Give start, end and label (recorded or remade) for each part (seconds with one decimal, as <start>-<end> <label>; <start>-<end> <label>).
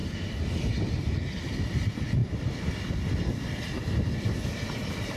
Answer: 0.0-2.2 recorded; 2.2-4.3 remade; 4.3-5.2 recorded